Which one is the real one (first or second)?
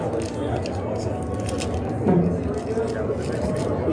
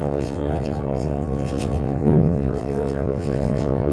first